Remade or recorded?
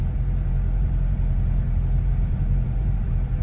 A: remade